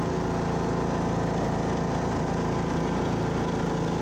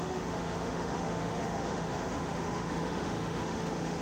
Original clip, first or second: first